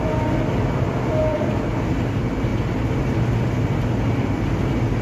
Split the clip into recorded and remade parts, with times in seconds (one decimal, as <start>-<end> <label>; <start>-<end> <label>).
0.0-5.0 recorded